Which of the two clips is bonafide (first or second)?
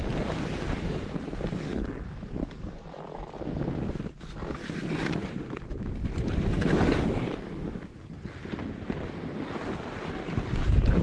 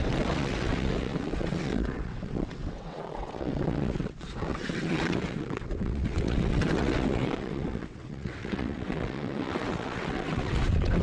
first